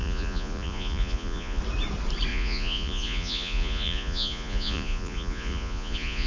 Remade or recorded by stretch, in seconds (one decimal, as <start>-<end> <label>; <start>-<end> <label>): 0.0-1.6 remade; 1.6-2.3 recorded; 2.3-6.3 remade